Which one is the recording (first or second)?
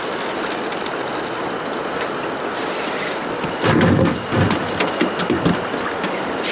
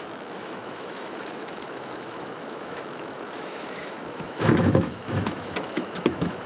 first